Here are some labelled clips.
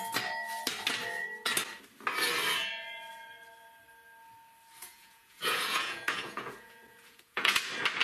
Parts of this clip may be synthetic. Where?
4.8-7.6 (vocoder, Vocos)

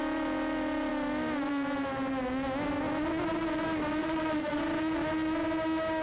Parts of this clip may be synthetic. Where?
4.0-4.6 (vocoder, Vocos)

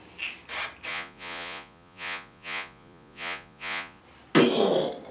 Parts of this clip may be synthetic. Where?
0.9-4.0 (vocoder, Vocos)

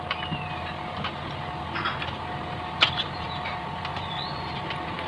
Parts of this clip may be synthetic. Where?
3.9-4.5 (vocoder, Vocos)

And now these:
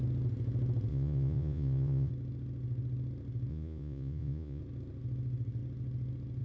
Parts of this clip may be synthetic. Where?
0.9-2.1 (vocoder, Vocos); 3.5-4.6